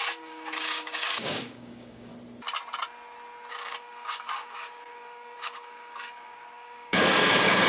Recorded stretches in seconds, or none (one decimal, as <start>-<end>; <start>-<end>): 2.1-3.5